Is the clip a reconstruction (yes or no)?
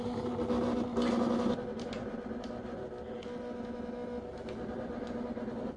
no